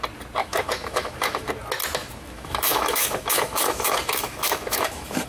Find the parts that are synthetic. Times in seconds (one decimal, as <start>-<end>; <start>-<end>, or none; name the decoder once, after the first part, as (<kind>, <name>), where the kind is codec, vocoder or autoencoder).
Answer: 0.4-1.5 (autoencoder, DAC-VAE); 2.0-5.3